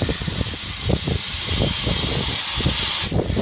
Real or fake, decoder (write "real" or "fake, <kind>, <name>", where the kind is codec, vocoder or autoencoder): real